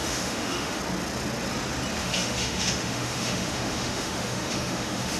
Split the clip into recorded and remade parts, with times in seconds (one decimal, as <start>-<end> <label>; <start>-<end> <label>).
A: 0.0-0.8 remade; 0.8-2.0 recorded; 2.0-5.2 remade